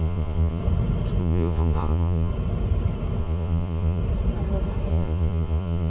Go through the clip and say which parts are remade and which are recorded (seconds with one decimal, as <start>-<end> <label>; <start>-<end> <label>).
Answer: 0.0-0.6 remade; 0.6-1.2 recorded; 1.2-2.3 remade; 2.3-3.2 recorded; 3.2-4.0 remade; 4.0-4.9 recorded; 4.9-5.9 remade